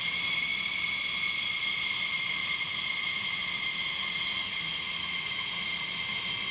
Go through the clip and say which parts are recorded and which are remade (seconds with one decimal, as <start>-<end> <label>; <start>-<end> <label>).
0.0-2.4 recorded; 2.4-3.4 remade; 3.4-3.8 recorded; 3.8-5.8 remade; 5.8-6.5 recorded